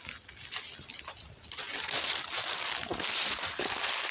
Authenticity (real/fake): real